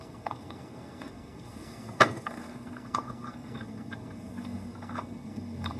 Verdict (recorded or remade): remade